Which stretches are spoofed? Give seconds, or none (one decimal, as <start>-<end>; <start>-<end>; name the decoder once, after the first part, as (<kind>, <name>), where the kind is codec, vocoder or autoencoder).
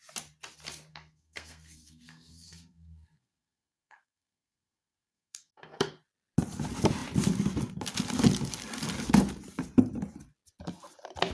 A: 0.9-5.9 (codec, SNAC)